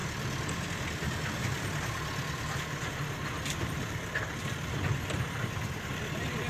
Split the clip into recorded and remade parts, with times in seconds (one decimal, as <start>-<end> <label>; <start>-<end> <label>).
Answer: 0.0-2.9 remade; 2.9-6.5 recorded